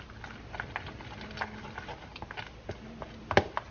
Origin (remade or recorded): recorded